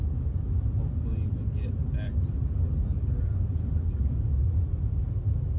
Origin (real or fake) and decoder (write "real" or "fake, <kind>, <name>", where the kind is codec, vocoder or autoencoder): real